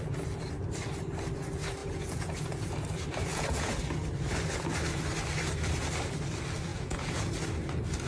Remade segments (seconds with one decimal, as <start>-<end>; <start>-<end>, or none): 1.8-2.7; 3.3-3.8; 6.7-7.3